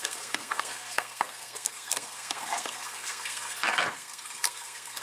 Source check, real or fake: fake